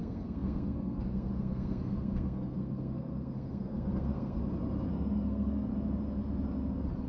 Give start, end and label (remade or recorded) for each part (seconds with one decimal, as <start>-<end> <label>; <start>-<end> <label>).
0.0-4.4 remade; 4.4-4.9 recorded; 4.9-5.7 remade; 5.7-7.1 recorded